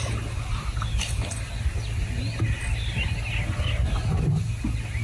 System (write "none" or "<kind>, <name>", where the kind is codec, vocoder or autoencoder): none